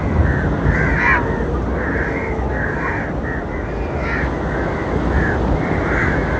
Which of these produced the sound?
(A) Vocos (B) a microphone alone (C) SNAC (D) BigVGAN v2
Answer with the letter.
B